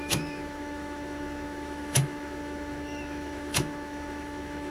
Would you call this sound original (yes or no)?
no